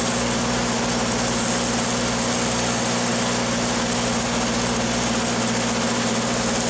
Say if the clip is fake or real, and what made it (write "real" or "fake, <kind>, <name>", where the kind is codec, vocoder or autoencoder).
real